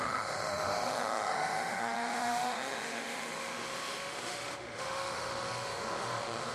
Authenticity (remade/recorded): remade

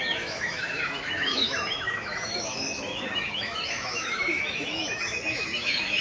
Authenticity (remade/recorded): remade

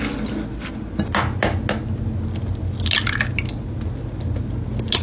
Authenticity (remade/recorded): recorded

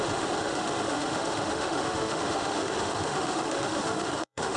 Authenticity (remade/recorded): remade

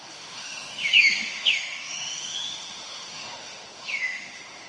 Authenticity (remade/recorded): remade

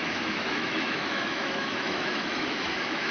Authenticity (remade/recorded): remade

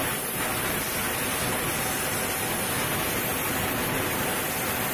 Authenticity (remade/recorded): recorded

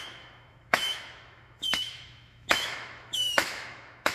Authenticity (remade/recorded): remade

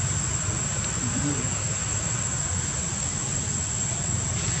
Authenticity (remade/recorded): recorded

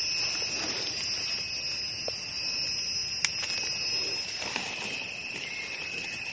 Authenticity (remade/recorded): recorded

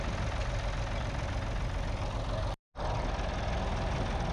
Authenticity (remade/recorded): recorded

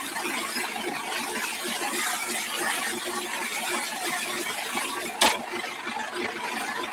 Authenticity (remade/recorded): recorded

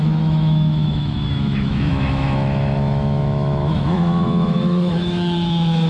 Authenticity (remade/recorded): remade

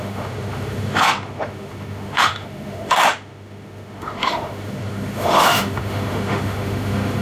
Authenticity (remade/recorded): remade